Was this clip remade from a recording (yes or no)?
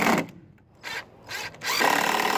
no